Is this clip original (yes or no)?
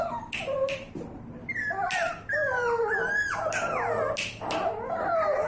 yes